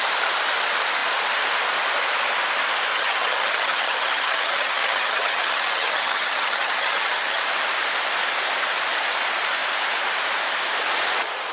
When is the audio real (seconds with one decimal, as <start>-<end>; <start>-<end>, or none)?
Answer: 0.0-2.9; 7.4-11.5